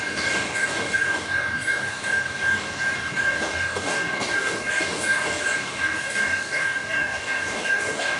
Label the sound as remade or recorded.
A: remade